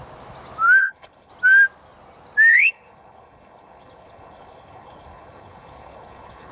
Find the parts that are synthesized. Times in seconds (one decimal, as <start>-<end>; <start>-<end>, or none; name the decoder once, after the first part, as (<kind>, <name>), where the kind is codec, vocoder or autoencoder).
0.8-1.3 (codec, HILCodec); 2.5-6.5

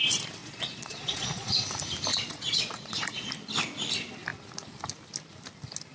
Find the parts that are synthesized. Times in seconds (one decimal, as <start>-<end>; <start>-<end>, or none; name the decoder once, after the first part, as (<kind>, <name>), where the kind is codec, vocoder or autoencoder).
0.4-1.5 (vocoder, Vocos); 2.1-3.3

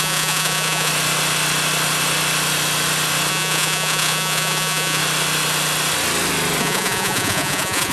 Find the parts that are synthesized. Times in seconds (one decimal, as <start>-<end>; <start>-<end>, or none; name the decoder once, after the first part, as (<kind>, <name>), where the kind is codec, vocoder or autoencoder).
0.0-0.9 (vocoder, Vocos); 3.3-5.0; 6.6-7.9

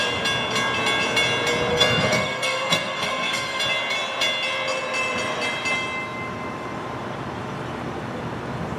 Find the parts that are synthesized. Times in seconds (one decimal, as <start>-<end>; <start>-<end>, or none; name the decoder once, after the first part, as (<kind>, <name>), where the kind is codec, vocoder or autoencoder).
1.7-3.6 (codec, SNAC)

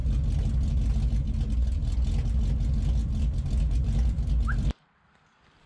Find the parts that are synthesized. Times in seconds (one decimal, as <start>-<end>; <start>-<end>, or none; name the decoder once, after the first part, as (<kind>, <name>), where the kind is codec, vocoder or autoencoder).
0.0-0.9 (vocoder, BigVGAN v2); 3.0-5.7